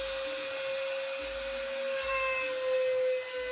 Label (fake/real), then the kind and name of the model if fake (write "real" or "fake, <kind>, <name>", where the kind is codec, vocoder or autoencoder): real